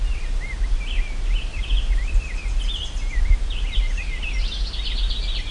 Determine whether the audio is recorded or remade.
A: recorded